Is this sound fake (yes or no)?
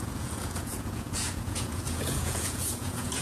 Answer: yes